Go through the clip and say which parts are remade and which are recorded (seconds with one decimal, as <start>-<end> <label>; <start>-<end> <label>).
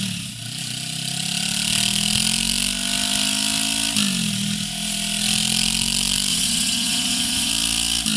0.0-6.3 recorded; 6.3-7.5 remade; 7.5-8.2 recorded